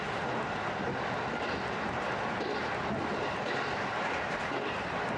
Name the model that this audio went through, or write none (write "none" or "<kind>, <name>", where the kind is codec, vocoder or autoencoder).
none